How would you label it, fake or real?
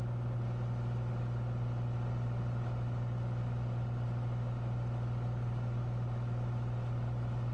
real